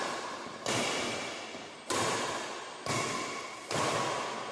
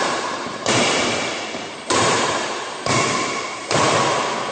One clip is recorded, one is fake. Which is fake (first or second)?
second